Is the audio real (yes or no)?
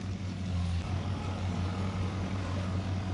no